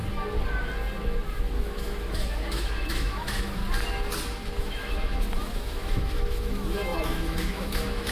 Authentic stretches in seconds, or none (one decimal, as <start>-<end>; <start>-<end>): 0.0-1.4; 3.6-4.6